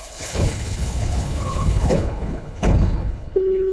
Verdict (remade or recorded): remade